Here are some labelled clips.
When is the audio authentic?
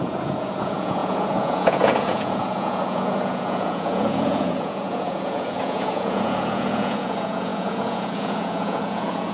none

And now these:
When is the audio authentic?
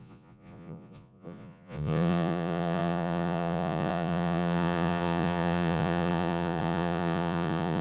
none